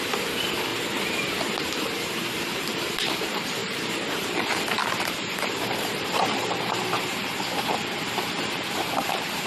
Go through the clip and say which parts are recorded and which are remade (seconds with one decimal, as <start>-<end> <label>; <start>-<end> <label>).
0.0-0.7 remade; 0.7-1.6 recorded; 1.6-3.6 remade; 3.6-4.1 recorded; 4.1-9.5 remade